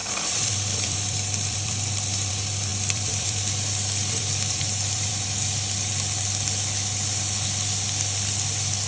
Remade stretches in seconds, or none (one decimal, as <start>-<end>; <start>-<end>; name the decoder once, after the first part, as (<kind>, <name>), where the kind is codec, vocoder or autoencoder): 0.0-2.3 (vocoder, BigVGAN v2); 2.7-5.1